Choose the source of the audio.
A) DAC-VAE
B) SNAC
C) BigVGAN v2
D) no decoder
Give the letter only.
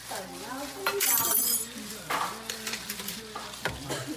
C